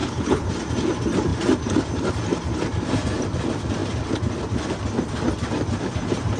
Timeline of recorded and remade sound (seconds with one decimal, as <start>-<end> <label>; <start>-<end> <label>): 0.0-0.5 remade; 0.5-6.4 recorded

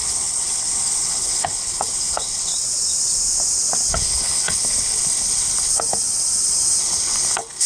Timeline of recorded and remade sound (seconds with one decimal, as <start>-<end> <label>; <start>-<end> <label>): 0.0-2.5 remade; 2.5-3.9 recorded; 3.9-5.7 remade; 5.7-6.8 recorded; 6.8-7.7 remade